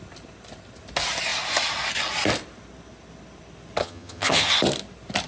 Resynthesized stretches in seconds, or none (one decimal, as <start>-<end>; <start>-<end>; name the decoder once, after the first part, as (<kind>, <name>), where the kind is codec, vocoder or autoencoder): 3.8-4.5 (vocoder, HiFi-GAN)